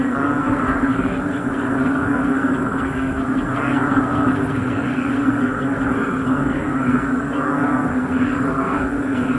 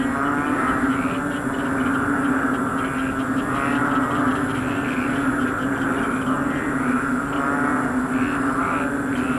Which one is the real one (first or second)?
second